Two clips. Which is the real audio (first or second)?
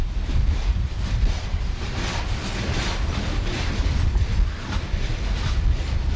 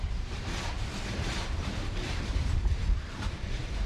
first